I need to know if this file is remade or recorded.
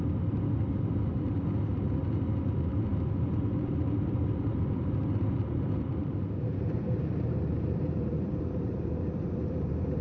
remade